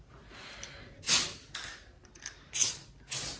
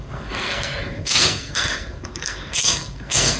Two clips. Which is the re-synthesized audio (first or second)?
second